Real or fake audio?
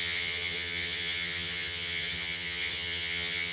fake